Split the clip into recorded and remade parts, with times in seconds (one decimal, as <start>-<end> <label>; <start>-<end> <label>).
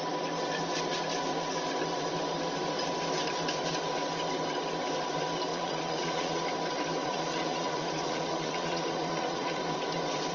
0.0-5.5 recorded; 5.5-6.4 remade; 6.4-7.0 recorded; 7.0-9.6 remade; 9.6-10.3 recorded